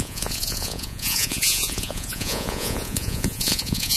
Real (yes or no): no